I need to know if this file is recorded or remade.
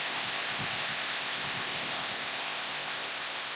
remade